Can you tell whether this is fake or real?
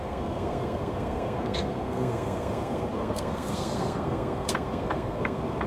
fake